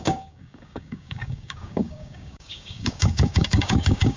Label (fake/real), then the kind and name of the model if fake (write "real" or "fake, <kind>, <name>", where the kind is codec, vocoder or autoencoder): fake, codec, DAC